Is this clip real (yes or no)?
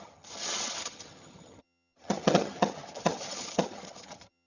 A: no